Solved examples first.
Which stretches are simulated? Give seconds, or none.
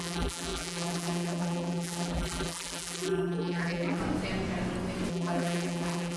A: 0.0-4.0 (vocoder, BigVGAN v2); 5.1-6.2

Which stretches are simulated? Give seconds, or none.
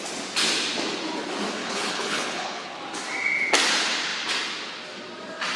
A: 1.6-2.8 (codec, HILCodec)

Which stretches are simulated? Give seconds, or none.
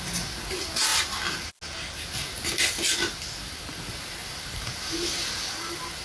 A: none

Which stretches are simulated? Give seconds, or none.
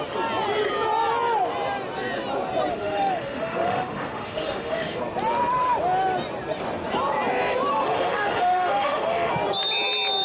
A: 2.7-5.0 (autoencoder, DAC-VAE); 7.7-9.3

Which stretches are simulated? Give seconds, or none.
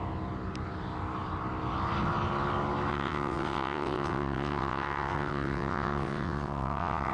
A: 2.9-7.1 (vocoder, WaveNeXt)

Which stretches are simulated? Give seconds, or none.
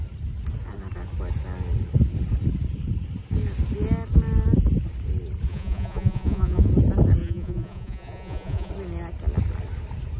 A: 5.5-6.7 (vocoder, Vocos); 7.2-8.7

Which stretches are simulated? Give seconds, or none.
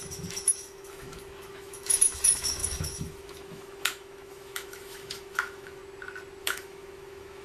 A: 0.0-5.8 (autoencoder, DAC-VAE); 6.4-7.4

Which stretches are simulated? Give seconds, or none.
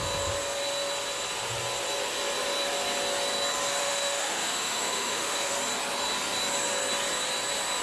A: 3.8-5.5 (autoencoder, DAC-VAE)